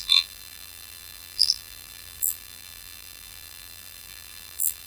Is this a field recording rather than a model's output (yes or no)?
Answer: no